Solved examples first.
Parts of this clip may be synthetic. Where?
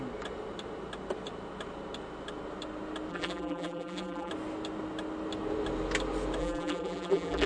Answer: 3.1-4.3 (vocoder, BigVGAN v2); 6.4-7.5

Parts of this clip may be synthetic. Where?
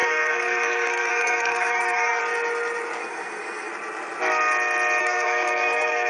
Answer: 0.0-2.2 (codec, SNAC); 3.0-3.7; 5.0-6.1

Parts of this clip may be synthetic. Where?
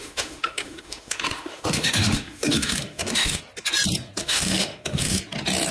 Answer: 0.0-3.4 (autoencoder, DAC-VAE); 4.2-5.2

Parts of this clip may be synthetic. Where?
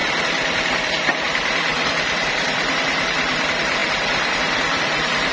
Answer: 0.0-5.3 (vocoder, BigVGAN v2)